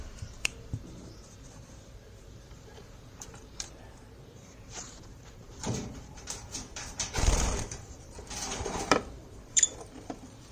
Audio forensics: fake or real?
fake